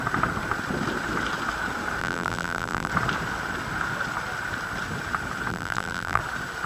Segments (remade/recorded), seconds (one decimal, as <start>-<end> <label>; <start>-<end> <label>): 0.0-2.0 recorded; 2.0-2.9 remade; 2.9-5.5 recorded; 5.5-6.2 remade; 6.2-6.7 recorded